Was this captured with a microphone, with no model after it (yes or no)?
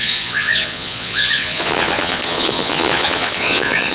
no